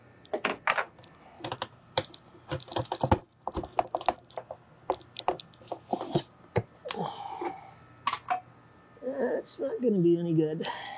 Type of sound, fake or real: real